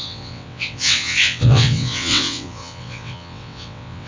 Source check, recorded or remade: remade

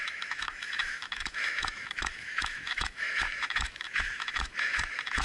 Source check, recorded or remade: remade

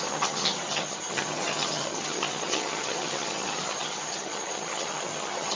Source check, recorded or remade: remade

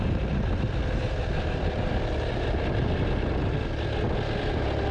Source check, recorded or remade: recorded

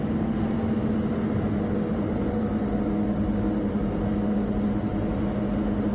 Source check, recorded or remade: recorded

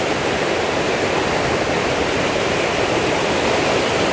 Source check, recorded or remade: recorded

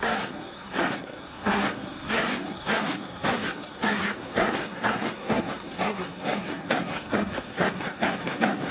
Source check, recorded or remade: remade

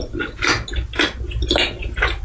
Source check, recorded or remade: recorded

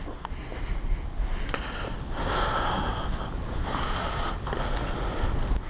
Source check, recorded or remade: recorded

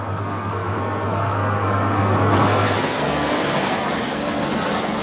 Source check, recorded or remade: remade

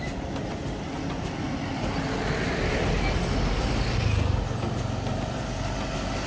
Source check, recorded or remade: recorded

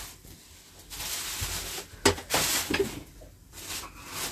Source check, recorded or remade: recorded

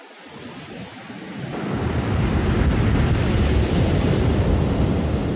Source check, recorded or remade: recorded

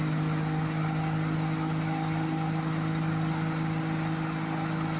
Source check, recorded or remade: recorded